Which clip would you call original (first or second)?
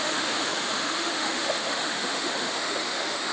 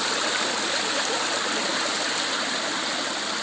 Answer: second